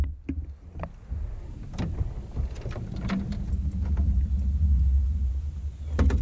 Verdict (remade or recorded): recorded